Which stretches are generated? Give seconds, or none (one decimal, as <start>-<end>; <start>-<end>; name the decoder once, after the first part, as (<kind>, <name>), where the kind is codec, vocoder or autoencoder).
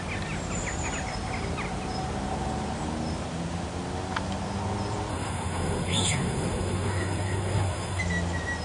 5.1-8.0 (codec, SNAC)